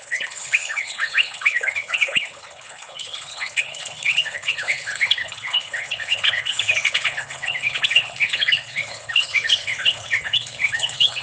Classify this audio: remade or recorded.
remade